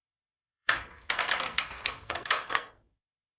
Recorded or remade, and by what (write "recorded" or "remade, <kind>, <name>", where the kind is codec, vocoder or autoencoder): remade, codec, SNAC